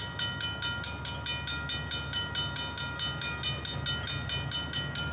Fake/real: real